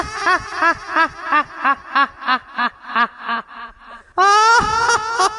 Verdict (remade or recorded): recorded